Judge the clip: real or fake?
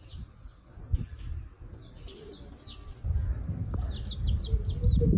real